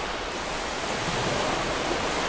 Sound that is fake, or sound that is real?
real